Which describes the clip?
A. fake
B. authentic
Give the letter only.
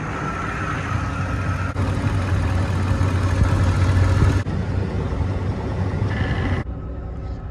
B